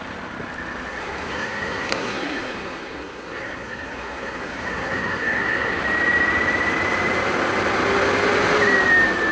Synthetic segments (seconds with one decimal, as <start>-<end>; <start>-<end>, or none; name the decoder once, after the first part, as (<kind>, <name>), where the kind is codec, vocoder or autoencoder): 0.9-5.8 (codec, SNAC)